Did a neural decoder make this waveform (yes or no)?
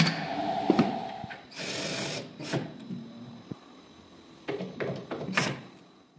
no